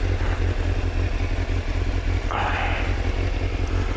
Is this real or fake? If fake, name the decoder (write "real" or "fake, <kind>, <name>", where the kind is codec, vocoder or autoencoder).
real